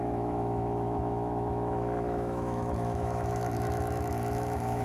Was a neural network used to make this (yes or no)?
yes